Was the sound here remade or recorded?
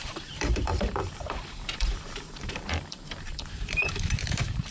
remade